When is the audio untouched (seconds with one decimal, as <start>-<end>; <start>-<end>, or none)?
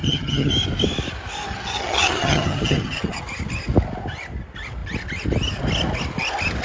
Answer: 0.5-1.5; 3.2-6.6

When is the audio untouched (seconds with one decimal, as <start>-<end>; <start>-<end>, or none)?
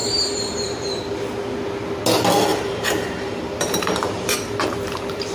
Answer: 1.0-2.5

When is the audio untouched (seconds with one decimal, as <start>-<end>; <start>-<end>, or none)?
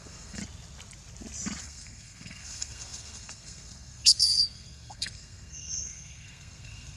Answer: 0.4-1.6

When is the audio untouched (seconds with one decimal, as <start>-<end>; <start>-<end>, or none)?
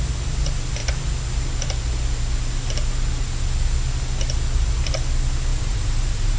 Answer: 0.0-5.5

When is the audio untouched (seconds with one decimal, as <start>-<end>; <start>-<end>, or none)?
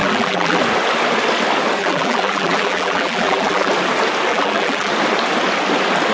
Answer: 0.6-1.8; 3.7-4.3; 4.9-6.1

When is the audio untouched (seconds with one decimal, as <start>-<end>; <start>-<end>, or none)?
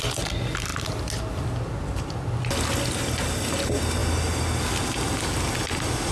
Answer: 0.0-6.1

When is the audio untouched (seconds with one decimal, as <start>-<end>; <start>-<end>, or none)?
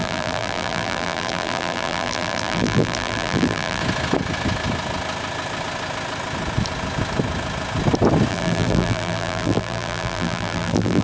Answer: 3.8-8.3